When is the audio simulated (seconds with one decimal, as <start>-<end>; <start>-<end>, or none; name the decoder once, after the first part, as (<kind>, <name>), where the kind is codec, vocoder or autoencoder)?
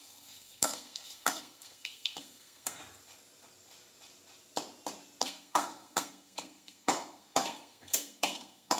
0.0-2.8 (codec, SNAC); 5.2-8.8